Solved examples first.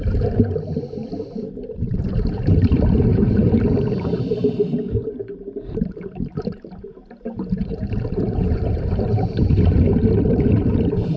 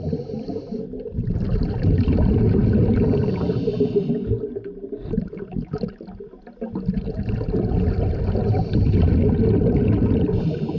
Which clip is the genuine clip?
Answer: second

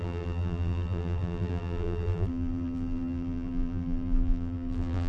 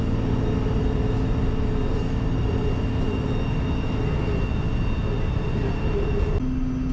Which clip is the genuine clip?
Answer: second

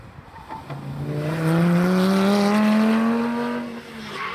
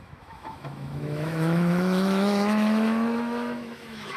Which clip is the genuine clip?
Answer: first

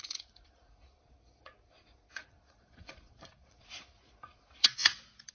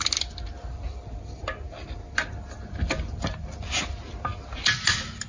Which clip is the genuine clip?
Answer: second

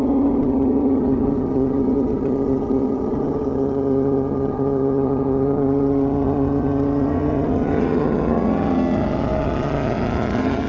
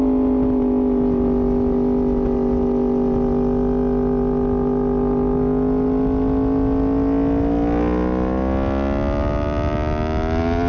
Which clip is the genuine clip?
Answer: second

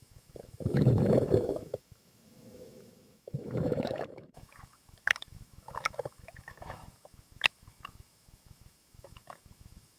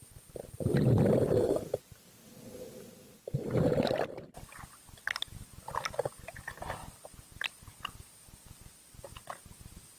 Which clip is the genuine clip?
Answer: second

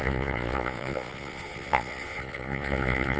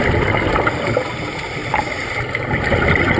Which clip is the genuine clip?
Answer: second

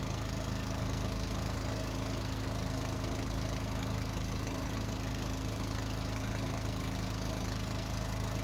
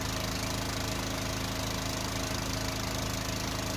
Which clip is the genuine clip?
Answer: second